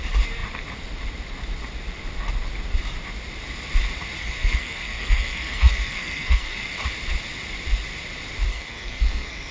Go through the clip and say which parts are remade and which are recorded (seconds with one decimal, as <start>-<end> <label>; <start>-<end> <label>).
0.0-4.2 recorded; 4.2-6.7 remade; 6.7-8.5 recorded; 8.5-9.5 remade